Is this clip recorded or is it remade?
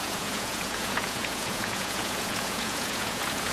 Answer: remade